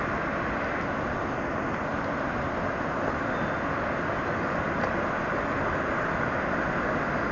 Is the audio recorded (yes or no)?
yes